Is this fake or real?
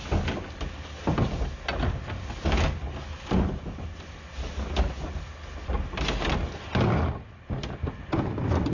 real